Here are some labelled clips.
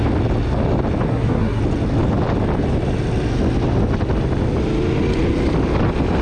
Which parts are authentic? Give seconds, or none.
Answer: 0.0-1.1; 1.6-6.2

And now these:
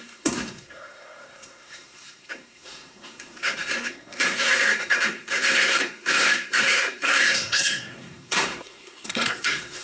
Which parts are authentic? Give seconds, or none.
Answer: none

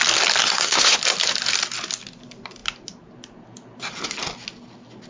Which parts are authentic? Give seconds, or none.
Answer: 0.0-0.4; 1.0-5.1

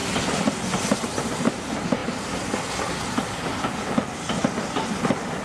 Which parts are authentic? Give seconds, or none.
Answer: 0.0-5.4

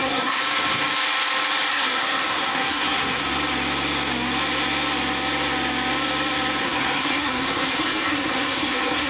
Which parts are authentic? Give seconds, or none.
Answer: 0.4-1.7; 3.2-6.6

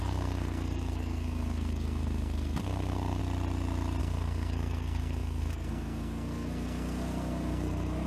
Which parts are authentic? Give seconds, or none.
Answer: 3.2-4.0

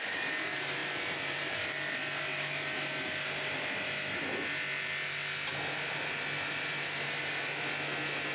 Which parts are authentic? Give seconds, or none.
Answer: 0.0-8.3

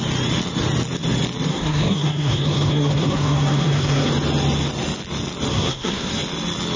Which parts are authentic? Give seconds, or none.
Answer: 0.0-1.5; 4.1-5.5; 6.1-6.8